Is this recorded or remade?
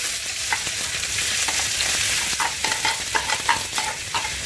recorded